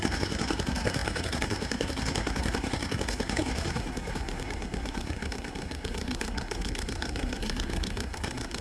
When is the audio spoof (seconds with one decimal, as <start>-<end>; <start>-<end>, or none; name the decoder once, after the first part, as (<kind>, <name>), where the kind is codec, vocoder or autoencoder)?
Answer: 0.0-8.6 (codec, SNAC)